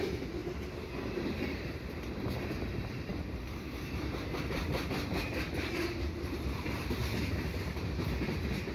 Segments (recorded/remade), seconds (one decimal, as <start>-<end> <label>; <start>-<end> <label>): 0.0-8.7 remade